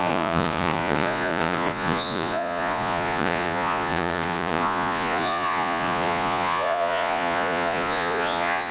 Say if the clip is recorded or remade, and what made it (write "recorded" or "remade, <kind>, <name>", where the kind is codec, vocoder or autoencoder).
remade, vocoder, Vocos